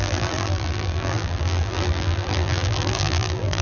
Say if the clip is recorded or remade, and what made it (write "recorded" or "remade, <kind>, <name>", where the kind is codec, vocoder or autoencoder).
remade, vocoder, BigVGAN v2